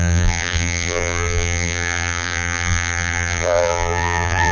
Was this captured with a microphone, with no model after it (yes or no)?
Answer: no